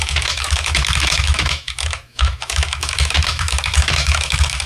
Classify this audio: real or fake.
fake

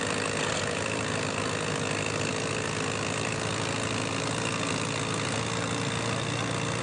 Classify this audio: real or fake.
real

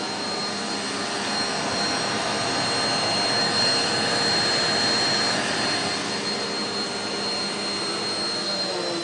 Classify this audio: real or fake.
real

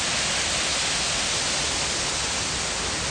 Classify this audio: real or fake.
real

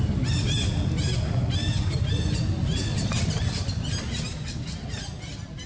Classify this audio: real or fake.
real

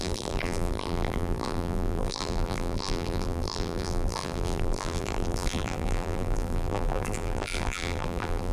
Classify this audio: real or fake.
fake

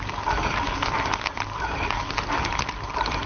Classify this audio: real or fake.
real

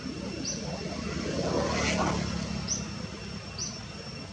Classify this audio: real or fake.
real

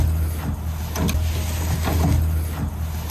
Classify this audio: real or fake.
real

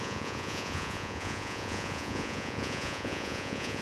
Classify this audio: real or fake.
fake